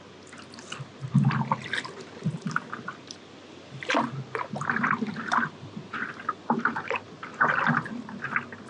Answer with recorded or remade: recorded